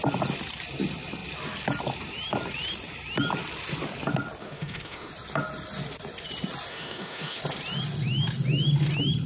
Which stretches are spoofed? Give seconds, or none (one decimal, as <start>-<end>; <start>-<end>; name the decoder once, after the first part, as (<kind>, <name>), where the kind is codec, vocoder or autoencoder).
4.4-5.1 (autoencoder, DAC-VAE); 6.7-7.4